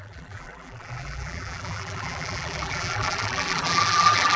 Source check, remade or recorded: remade